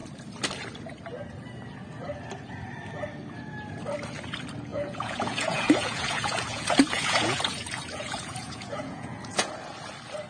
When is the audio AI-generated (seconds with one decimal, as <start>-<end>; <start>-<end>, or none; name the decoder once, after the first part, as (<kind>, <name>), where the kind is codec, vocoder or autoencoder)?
4.7-9.5 (vocoder, Vocos)